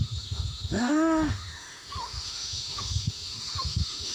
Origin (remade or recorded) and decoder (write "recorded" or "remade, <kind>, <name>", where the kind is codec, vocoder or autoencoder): remade, autoencoder, DAC-VAE